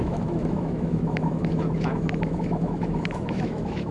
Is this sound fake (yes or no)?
yes